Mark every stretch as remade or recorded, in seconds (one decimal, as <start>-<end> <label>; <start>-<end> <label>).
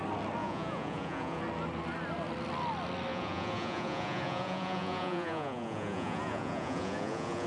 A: 0.0-0.4 recorded; 0.4-1.4 remade; 1.4-3.1 recorded; 3.1-7.5 remade